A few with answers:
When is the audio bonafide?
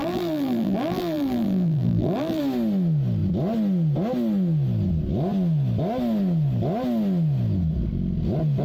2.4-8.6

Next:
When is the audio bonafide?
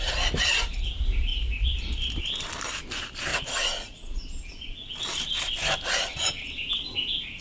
0.0-3.3; 5.0-7.4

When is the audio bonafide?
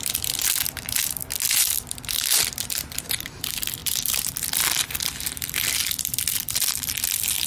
1.2-1.7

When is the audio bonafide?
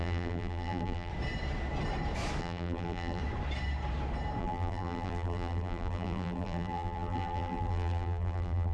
1.1-2.4; 3.2-4.4